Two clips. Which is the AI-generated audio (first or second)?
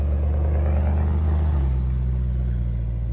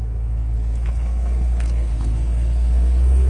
second